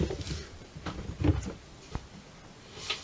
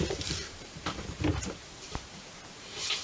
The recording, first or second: first